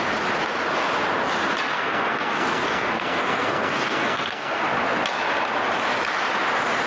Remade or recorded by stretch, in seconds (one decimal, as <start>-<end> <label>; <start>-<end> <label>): 0.0-1.7 recorded; 1.7-4.6 remade; 4.6-6.9 recorded